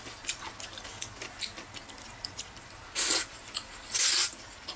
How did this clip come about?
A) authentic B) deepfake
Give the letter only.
A